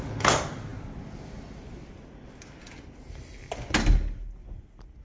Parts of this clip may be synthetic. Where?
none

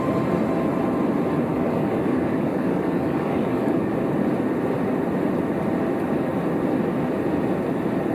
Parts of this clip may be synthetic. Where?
1.5-3.9 (codec, DAC)

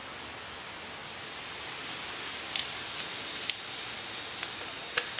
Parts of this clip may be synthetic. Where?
none

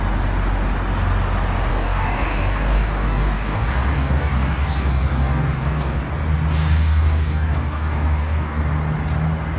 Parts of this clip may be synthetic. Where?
1.7-6.0 (codec, DAC); 6.6-8.6

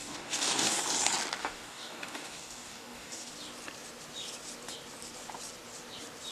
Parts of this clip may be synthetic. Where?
0.0-0.8 (codec, DAC); 1.4-3.3

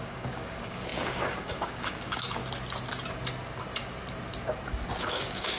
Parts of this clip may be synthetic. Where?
0.0-2.4 (codec, DAC); 5.0-5.6

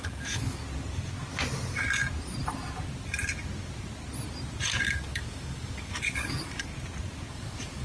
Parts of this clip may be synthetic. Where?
0.0-0.6 (codec, DAC); 4.8-6.7; 7.3-7.8

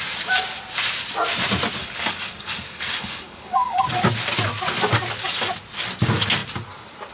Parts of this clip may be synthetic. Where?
1.8-3.8 (codec, DAC)